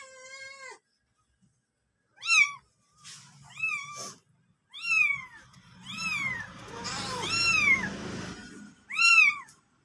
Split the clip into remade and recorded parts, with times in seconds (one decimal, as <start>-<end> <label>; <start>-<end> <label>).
0.0-5.0 recorded; 5.0-7.9 remade; 7.9-9.8 recorded